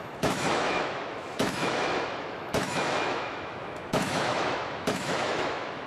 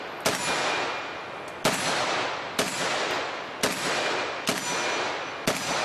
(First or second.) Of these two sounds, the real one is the second